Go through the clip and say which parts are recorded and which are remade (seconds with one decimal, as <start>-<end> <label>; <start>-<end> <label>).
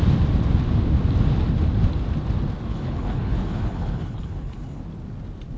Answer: 0.0-2.7 recorded; 2.7-4.8 remade; 4.8-5.6 recorded